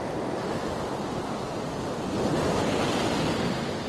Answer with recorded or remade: recorded